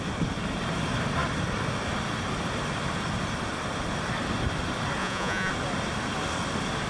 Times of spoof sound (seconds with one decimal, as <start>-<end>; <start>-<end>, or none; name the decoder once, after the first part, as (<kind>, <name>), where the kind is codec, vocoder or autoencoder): 5.0-5.5 (vocoder, Vocos)